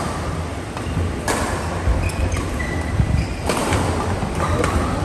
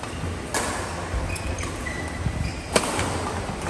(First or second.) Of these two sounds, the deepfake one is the first